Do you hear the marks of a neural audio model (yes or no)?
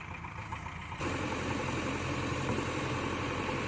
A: no